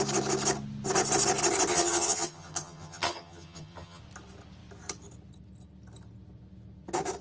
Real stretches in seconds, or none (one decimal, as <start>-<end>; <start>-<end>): 0.0-1.7; 4.0-7.2